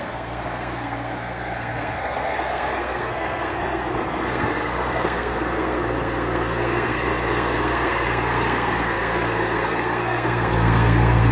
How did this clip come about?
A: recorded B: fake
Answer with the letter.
B